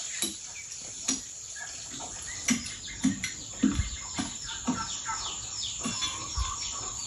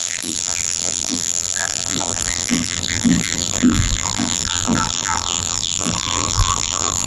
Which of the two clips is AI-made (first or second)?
second